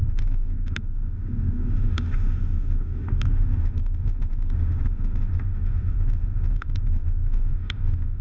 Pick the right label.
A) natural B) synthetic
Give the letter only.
B